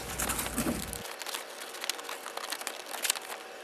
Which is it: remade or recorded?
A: recorded